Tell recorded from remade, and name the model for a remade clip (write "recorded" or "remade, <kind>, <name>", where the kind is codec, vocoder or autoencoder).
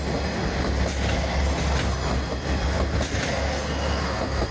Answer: recorded